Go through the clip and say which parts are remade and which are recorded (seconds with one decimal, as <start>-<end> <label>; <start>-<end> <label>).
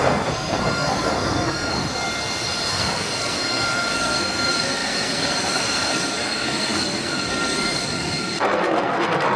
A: 0.0-1.8 remade; 1.8-2.7 recorded; 2.7-9.4 remade